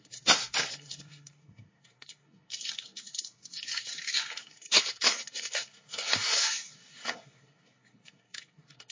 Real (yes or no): no